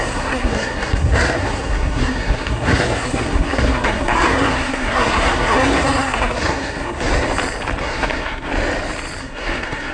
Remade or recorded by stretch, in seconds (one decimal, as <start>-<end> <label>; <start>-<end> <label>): 0.0-7.1 remade; 7.1-7.8 recorded; 7.8-8.5 remade; 8.5-9.2 recorded; 9.2-9.9 remade